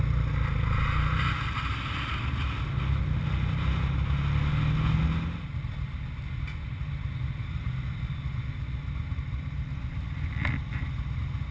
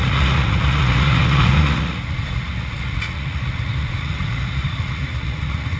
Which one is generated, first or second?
second